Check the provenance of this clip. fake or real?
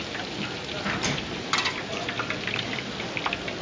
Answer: real